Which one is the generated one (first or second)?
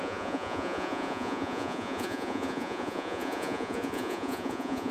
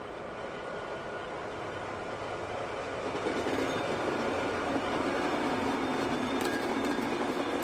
first